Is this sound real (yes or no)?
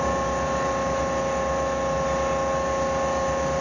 yes